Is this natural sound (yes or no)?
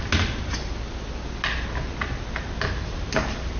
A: yes